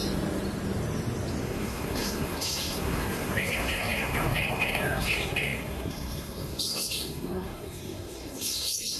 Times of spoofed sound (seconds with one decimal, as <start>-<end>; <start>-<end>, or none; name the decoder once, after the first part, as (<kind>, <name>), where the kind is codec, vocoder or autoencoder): 1.4-9.0 (codec, SNAC)